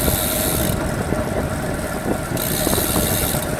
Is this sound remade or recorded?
recorded